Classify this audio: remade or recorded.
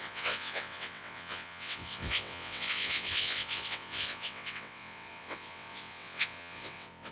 remade